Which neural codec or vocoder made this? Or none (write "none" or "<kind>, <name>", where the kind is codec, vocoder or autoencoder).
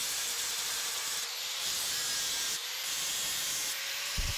vocoder, BigVGAN v2